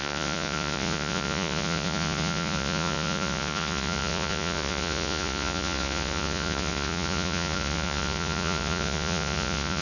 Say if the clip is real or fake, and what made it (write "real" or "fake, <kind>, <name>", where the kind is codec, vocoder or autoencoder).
fake, vocoder, Vocos